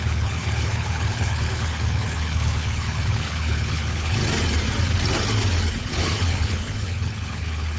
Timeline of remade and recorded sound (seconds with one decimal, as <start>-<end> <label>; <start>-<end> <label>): 0.0-4.2 remade; 4.2-5.8 recorded; 5.8-7.8 remade